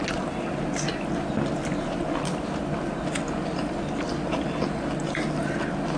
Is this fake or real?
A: real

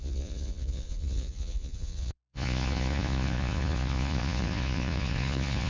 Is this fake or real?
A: fake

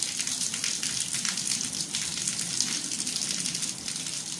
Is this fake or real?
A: real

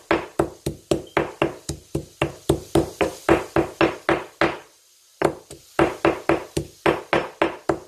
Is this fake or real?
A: real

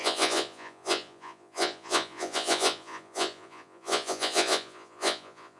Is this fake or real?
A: fake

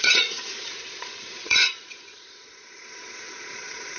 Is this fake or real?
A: fake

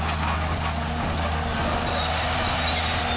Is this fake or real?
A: real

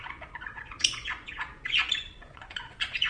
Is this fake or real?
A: fake